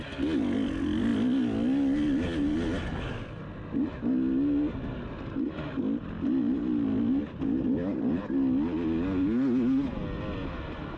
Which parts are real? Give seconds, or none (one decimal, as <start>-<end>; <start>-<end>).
0.0-11.0

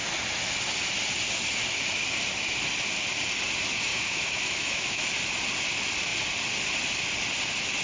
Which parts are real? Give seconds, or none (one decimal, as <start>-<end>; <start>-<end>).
0.0-3.9; 5.0-7.8

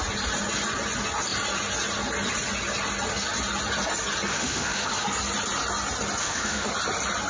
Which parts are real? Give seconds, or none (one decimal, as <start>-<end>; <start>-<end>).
0.0-4.3; 4.9-6.2; 6.7-7.3

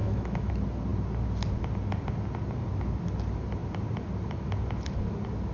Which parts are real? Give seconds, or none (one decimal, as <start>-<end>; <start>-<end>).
0.5-5.5

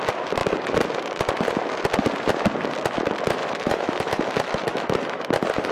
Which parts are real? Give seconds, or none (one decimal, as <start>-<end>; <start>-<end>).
0.0-3.4; 5.2-5.7

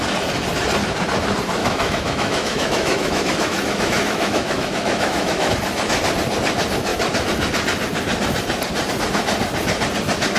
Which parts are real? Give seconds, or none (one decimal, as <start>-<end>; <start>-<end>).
0.0-1.6; 5.5-10.4

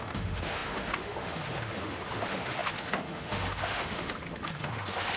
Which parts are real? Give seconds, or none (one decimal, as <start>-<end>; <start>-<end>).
none